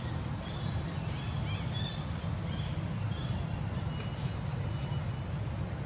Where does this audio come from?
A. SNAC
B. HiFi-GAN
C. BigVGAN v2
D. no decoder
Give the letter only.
D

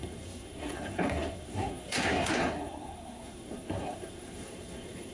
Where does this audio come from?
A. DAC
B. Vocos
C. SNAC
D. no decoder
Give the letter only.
C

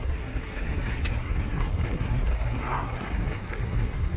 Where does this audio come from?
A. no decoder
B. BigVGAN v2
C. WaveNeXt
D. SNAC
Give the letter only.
D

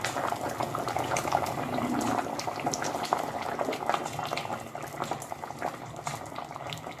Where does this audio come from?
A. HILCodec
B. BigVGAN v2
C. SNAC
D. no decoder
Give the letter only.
D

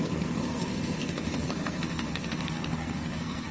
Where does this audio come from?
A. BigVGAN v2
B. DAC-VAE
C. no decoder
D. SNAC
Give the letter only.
D